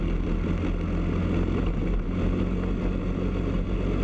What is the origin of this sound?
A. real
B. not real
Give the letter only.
A